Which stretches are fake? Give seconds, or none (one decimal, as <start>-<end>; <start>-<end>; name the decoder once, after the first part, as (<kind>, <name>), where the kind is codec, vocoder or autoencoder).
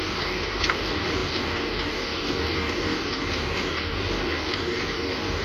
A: 0.0-5.4 (codec, DAC)